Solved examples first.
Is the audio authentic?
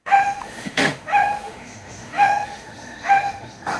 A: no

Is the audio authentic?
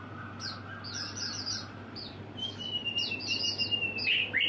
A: yes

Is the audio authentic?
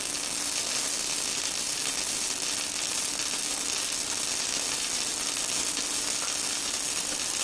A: yes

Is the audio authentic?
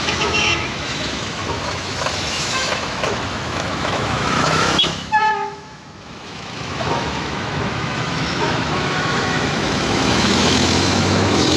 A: no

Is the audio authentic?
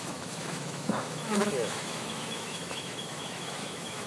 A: no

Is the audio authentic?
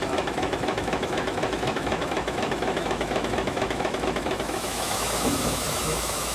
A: no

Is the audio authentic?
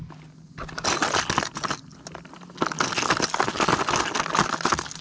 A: yes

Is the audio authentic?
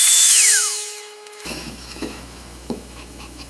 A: no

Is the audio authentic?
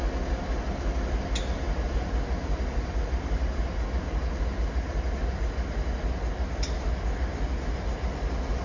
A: yes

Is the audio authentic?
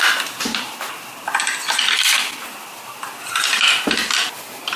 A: yes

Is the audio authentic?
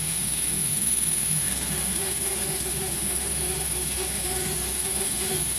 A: no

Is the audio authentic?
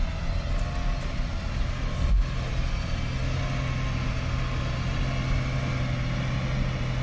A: yes